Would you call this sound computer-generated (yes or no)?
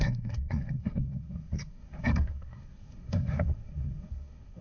yes